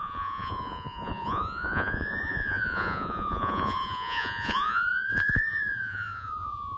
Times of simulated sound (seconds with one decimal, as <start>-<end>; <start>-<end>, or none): 0.0-6.8